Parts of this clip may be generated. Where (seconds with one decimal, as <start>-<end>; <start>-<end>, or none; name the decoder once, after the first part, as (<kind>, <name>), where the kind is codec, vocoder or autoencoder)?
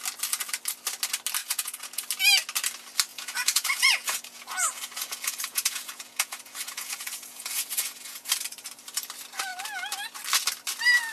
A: 1.4-2.0 (vocoder, Vocos); 3.1-8.3